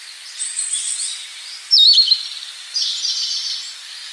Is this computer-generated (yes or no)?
yes